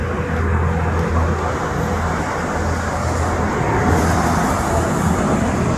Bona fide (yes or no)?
yes